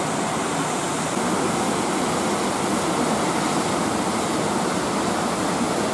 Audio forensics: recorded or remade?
recorded